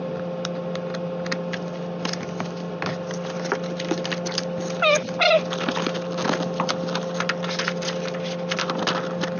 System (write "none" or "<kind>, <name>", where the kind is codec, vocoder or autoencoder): none